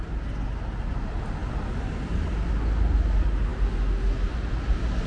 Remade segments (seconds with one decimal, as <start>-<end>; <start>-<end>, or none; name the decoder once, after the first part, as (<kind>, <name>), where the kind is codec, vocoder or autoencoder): none